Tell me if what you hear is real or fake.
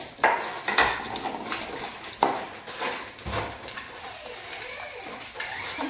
real